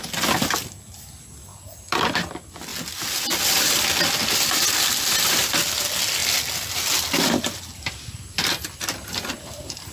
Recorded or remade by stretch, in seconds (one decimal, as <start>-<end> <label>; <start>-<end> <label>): 0.0-9.9 recorded